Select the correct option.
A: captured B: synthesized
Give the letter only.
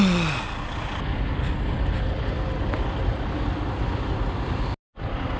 A